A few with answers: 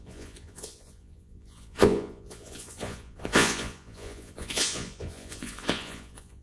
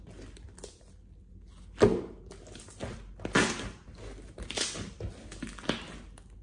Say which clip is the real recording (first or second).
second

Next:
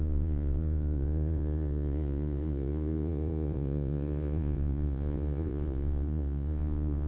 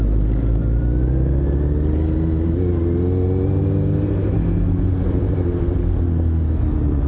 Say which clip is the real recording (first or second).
second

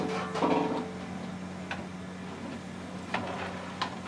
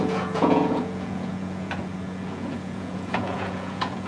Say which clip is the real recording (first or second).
first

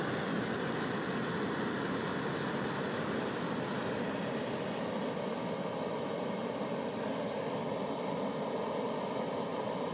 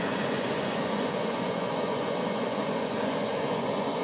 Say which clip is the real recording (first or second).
first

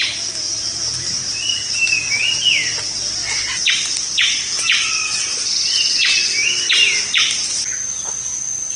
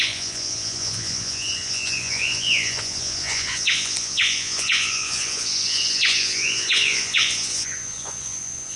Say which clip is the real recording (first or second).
first